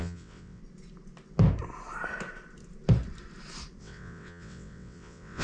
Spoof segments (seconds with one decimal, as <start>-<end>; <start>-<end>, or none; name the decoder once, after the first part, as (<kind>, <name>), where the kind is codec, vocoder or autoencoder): 0.0-0.6 (vocoder, WaveNeXt); 3.8-5.4